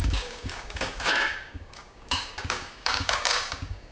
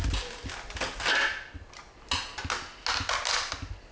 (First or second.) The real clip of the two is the second